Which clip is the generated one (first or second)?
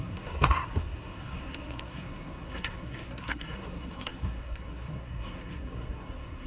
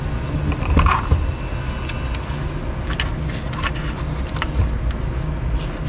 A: first